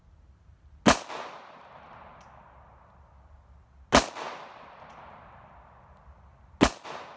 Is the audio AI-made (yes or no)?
no